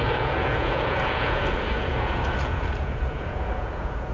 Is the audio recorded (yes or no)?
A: no